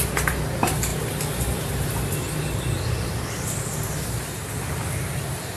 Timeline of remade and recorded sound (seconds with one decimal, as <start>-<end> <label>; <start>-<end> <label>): 0.0-5.6 recorded